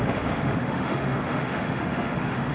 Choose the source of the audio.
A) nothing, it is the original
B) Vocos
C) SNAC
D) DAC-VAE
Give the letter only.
D